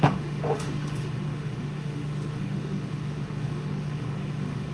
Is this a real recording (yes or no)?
no